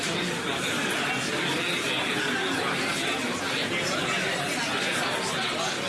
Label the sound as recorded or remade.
recorded